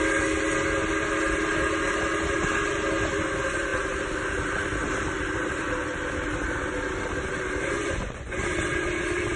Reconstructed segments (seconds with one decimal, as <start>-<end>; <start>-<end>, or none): 7.7-8.4